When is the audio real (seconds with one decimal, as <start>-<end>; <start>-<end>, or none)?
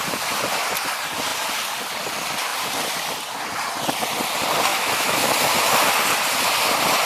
0.0-4.7; 5.3-7.1